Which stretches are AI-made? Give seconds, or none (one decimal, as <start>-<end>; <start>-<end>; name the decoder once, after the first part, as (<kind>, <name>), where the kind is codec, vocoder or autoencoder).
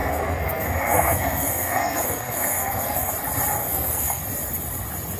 0.0-3.1 (codec, SNAC); 3.6-4.2